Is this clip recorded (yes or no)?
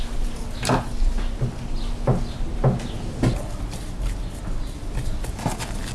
yes